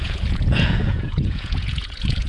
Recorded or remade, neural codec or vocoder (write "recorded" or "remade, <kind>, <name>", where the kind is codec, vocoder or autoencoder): remade, vocoder, Vocos